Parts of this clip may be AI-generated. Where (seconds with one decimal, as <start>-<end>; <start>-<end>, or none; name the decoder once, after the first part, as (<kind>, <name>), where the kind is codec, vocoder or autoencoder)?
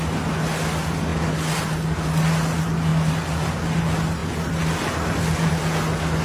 none